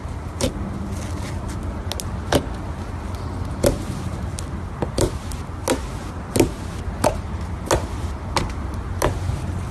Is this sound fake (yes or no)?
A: no